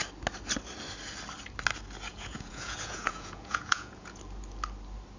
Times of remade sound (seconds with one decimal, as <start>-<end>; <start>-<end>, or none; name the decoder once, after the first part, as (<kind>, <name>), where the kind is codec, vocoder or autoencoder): 2.1-4.2 (vocoder, Vocos)